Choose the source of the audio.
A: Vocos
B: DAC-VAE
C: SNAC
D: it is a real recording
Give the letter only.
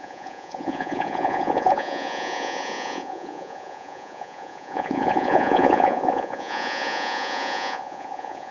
A